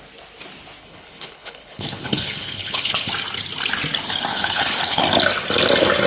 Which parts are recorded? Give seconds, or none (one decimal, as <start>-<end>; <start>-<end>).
0.0-0.8; 3.1-4.3; 5.0-6.1